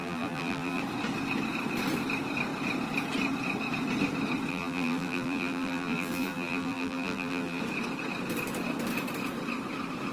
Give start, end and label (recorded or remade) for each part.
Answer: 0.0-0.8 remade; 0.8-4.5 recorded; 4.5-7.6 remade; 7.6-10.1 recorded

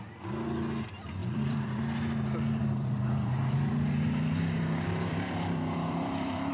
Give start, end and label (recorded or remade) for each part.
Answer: 0.0-1.2 recorded; 1.2-1.8 remade; 1.8-2.6 recorded; 2.6-6.5 remade

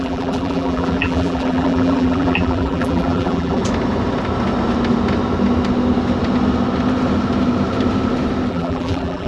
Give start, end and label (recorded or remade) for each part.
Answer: 0.0-3.6 remade; 3.6-8.5 recorded; 8.5-9.3 remade

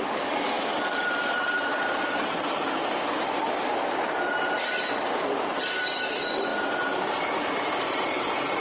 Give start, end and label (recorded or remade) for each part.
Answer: 0.0-8.6 recorded

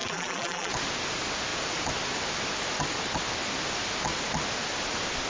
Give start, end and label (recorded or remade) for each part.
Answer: 0.0-0.7 remade; 0.7-5.3 recorded

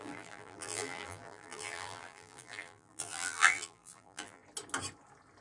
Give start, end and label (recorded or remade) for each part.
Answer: 0.0-4.4 remade; 4.4-5.4 recorded